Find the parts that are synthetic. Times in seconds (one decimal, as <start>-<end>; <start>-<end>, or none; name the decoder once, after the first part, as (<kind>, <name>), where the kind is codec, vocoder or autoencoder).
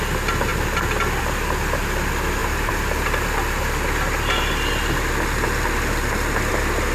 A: none